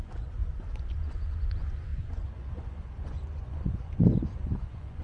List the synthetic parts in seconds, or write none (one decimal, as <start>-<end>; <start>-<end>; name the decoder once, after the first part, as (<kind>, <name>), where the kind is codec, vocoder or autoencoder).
0.0-5.0 (vocoder, Vocos)